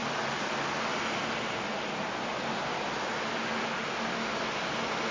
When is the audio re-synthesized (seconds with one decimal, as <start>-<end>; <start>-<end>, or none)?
none